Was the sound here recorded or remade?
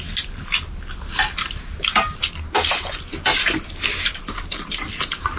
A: recorded